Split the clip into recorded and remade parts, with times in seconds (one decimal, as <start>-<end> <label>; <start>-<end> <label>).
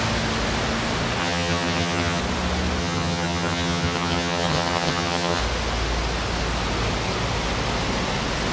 0.0-1.2 recorded; 1.2-2.2 remade; 2.2-2.8 recorded; 2.8-5.4 remade; 5.4-8.5 recorded